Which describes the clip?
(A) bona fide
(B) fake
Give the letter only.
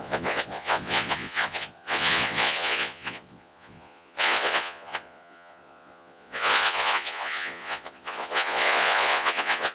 B